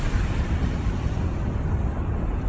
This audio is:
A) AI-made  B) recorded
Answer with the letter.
A